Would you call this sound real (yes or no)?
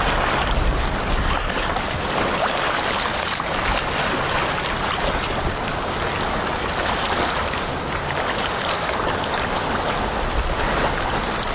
yes